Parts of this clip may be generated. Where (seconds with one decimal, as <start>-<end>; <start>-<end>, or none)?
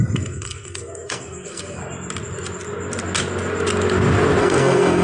0.0-1.8; 4.4-5.0